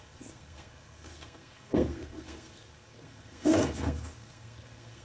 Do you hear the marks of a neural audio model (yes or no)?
yes